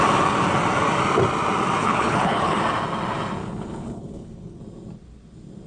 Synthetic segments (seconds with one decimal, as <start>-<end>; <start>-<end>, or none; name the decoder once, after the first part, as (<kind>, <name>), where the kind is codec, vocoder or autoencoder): 1.8-2.6 (codec, HILCodec); 3.4-4.6